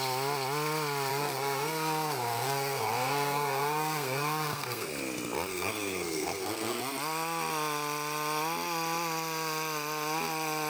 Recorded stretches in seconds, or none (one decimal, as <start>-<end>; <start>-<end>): 0.0-1.1; 4.9-5.5; 6.8-10.7